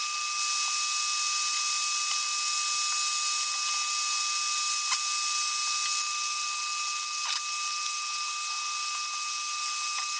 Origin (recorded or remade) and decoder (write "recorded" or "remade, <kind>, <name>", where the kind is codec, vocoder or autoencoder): recorded